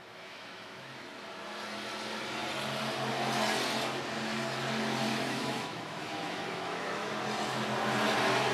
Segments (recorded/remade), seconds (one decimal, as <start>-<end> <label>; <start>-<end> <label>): 0.0-0.9 remade; 0.9-5.1 recorded; 5.1-7.1 remade; 7.1-8.5 recorded